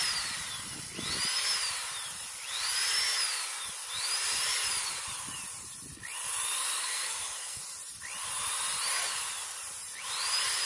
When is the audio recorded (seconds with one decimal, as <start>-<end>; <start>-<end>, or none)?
0.0-6.8; 7.6-10.7